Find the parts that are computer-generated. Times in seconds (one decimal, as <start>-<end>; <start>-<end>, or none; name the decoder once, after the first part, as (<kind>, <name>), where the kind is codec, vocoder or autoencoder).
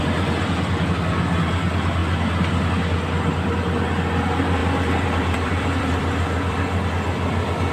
4.6-6.8 (vocoder, BigVGAN v2)